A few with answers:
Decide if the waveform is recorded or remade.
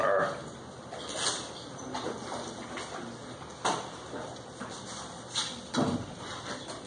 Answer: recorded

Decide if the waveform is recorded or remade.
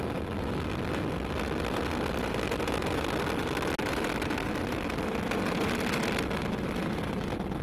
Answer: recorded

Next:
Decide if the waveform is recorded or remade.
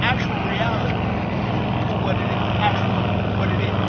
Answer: recorded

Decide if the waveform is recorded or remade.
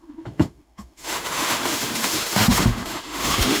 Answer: remade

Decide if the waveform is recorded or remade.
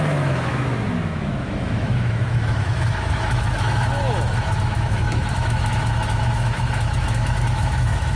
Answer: remade